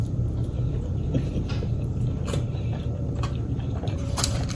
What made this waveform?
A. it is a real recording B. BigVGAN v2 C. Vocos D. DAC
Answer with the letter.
B